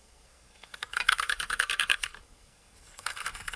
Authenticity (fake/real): fake